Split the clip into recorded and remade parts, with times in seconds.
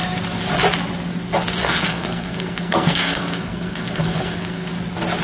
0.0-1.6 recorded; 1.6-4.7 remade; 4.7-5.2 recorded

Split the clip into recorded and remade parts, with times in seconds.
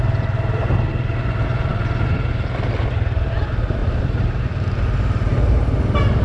0.0-3.8 recorded; 3.8-5.6 remade; 5.6-6.2 recorded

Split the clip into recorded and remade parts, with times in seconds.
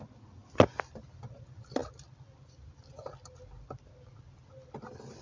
0.0-5.2 recorded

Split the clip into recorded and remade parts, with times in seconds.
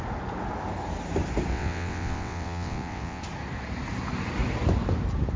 0.0-1.5 recorded; 1.5-3.2 remade; 3.2-5.4 recorded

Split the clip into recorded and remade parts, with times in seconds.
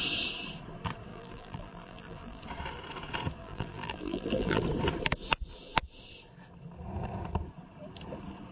0.0-1.1 recorded; 1.1-2.4 remade; 2.4-3.4 recorded; 3.4-4.6 remade; 4.6-8.5 recorded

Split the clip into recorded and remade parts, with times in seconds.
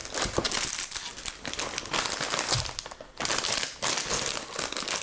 0.0-5.0 recorded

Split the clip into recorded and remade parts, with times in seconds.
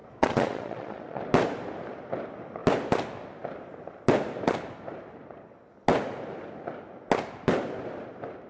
0.0-1.2 remade; 1.2-8.5 recorded